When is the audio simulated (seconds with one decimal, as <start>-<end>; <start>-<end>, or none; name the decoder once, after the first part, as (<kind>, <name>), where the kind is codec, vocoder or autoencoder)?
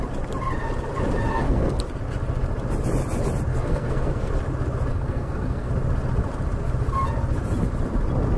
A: 1.3-1.8 (codec, SNAC); 3.5-4.3; 4.9-5.7